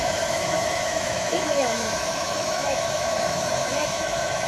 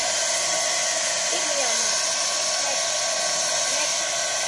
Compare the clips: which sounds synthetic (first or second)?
first